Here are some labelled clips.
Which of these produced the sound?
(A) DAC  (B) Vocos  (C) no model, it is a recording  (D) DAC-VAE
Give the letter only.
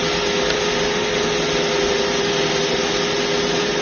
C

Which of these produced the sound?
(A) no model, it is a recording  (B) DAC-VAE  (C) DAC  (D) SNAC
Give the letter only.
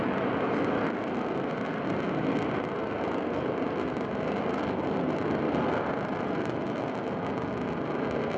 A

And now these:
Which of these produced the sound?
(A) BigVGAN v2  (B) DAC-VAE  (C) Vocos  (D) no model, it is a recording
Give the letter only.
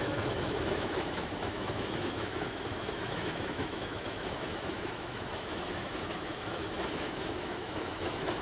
B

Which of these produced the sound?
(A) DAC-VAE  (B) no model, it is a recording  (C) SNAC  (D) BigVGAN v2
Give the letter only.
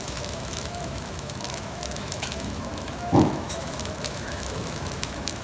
A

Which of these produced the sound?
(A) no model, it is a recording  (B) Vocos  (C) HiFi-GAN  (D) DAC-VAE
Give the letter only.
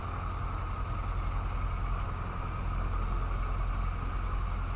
A